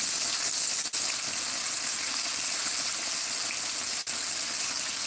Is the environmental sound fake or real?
real